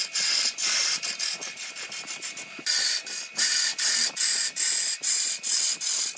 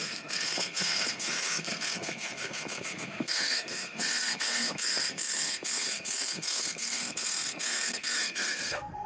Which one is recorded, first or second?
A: first